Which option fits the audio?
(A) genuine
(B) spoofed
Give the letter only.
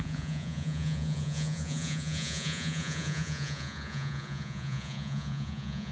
B